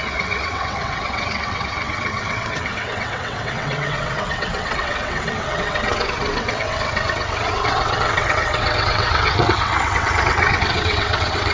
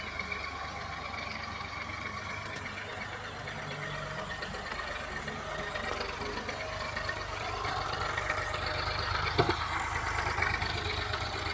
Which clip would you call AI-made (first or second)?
first